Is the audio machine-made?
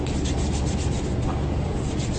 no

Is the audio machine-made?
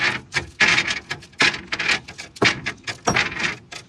no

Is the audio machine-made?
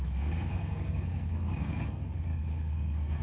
yes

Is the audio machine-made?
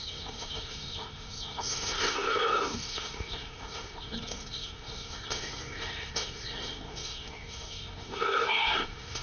yes